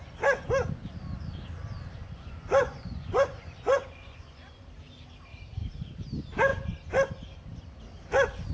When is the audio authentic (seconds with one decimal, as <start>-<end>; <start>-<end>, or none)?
0.0-2.0; 4.6-8.5

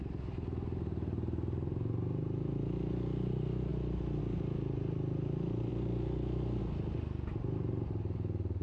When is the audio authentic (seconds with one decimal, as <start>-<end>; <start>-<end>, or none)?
0.0-8.6

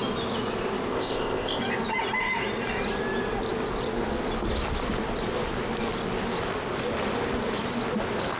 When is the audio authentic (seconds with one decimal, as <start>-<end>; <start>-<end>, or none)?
0.0-0.9; 1.6-8.4

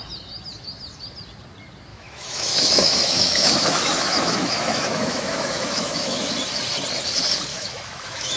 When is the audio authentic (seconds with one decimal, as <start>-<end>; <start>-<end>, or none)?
0.0-1.9; 6.3-7.5

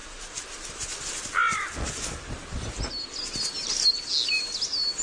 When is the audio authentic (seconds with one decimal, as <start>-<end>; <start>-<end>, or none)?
0.0-5.0